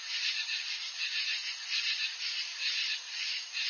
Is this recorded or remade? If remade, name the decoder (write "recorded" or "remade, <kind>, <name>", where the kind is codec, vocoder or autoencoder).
recorded